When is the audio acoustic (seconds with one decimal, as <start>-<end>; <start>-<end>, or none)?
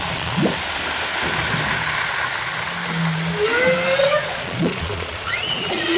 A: 0.4-4.0